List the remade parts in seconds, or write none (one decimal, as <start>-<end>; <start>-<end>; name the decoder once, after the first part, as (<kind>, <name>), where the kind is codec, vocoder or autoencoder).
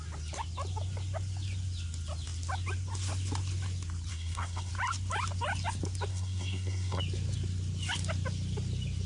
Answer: 4.1-4.7 (codec, SNAC); 6.1-7.0